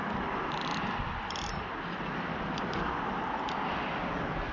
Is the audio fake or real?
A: real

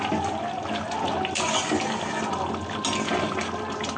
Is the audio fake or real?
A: real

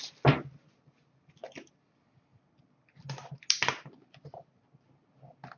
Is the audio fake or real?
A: real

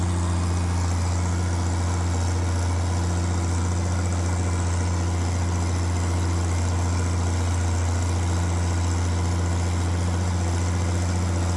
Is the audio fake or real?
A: real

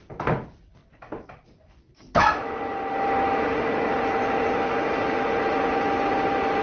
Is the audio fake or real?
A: real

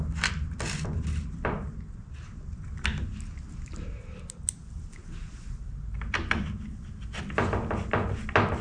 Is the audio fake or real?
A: real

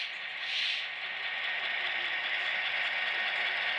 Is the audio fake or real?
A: real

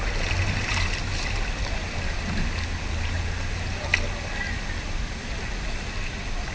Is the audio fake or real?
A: real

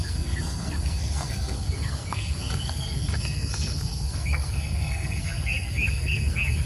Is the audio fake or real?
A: fake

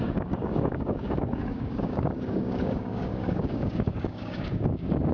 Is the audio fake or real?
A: fake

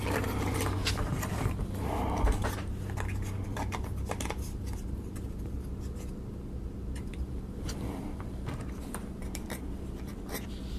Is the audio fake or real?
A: fake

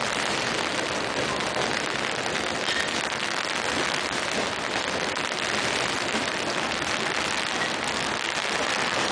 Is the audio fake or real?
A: real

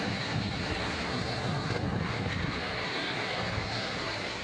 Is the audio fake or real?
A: fake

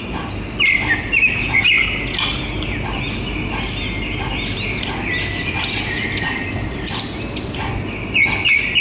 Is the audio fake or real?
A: real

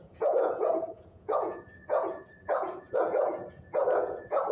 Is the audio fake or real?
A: fake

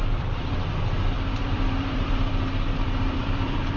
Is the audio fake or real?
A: fake